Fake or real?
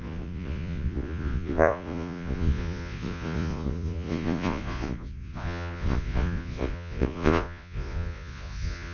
fake